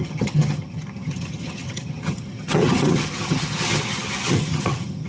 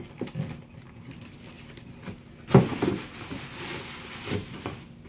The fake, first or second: first